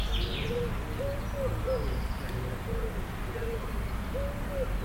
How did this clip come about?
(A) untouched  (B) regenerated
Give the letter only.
A